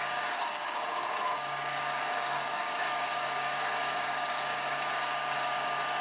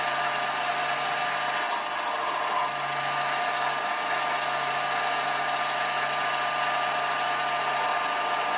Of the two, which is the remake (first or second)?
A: first